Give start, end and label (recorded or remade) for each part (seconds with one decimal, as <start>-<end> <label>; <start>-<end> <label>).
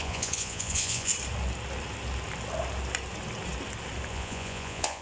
0.0-1.1 remade; 1.1-4.1 recorded; 4.1-5.0 remade